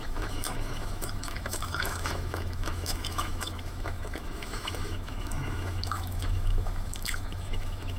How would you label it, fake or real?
fake